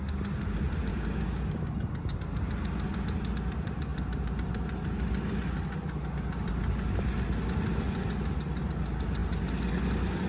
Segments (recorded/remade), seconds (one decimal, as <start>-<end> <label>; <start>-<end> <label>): 0.0-0.9 recorded; 0.9-1.7 remade; 1.7-10.3 recorded